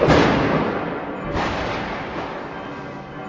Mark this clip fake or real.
real